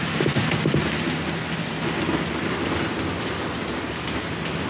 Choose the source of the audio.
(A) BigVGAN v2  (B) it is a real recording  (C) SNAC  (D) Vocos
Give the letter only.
B